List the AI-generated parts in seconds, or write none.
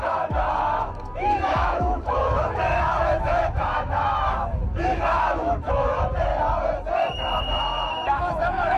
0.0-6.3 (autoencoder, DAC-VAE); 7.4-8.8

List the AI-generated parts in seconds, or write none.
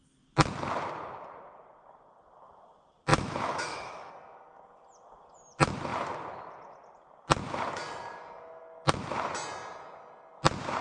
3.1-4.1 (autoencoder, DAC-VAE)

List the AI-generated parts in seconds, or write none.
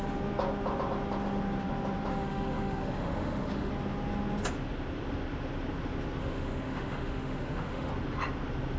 2.1-3.7 (autoencoder, DAC-VAE); 6.2-7.9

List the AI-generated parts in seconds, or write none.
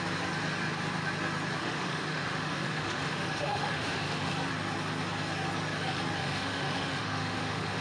1.6-4.3 (autoencoder, DAC-VAE); 6.2-7.8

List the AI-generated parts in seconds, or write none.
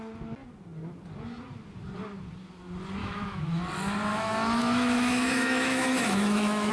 3.0-3.6 (autoencoder, DAC-VAE); 4.1-6.7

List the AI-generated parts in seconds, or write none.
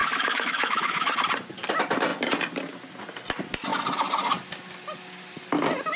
0.0-1.1 (autoencoder, DAC-VAE)